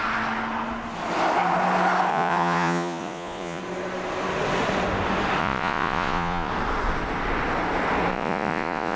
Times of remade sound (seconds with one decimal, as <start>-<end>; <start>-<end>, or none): 2.1-3.6; 5.4-6.5; 8.1-9.0